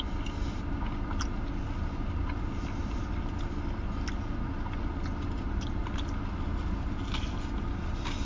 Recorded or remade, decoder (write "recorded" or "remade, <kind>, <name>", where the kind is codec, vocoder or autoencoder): recorded